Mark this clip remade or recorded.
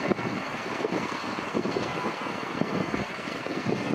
remade